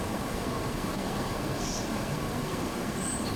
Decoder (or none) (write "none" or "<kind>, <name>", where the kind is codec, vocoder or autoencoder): codec, SNAC